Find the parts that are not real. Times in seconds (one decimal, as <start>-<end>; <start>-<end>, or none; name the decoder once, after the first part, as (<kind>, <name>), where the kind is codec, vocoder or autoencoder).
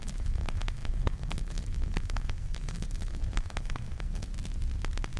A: 0.0-4.3 (codec, SNAC)